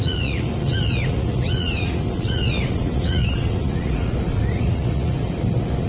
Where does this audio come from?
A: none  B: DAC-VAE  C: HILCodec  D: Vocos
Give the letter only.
D